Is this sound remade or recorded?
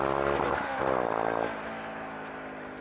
recorded